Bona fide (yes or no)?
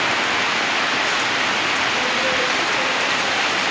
yes